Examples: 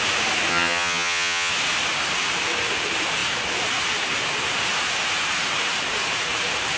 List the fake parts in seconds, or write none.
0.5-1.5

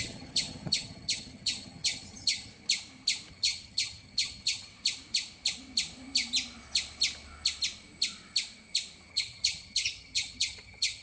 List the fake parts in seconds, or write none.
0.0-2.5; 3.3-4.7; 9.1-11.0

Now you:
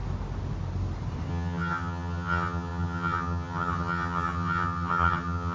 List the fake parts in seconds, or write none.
1.3-5.5

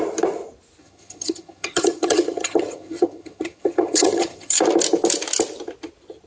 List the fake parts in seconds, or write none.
0.8-4.6

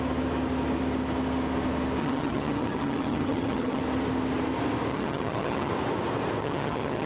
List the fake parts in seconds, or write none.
2.0-3.8; 4.9-5.7; 6.4-7.1

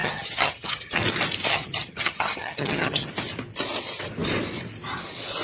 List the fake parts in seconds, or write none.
0.0-1.0; 1.5-3.1

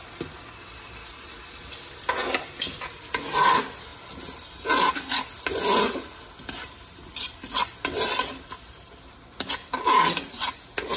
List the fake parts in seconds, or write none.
none